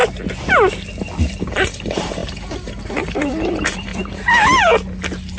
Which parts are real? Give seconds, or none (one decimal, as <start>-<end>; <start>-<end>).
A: 0.0-1.5; 3.9-5.4